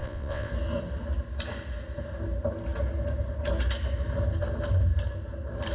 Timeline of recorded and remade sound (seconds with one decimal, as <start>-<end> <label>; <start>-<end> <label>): 0.0-0.5 remade; 0.5-5.7 recorded